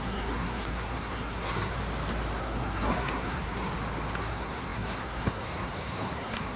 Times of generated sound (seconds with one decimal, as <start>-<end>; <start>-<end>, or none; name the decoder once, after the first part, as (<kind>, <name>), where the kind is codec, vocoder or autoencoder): 0.0-1.8 (codec, SNAC); 2.4-3.7; 4.2-6.6